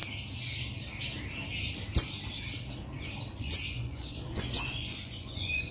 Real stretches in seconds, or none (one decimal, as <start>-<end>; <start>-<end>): 0.0-3.4